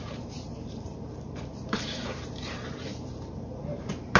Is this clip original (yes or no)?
no